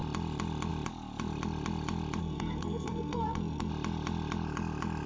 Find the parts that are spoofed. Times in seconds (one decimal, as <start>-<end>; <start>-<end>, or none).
2.2-3.7